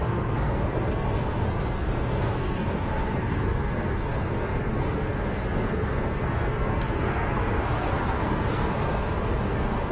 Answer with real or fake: fake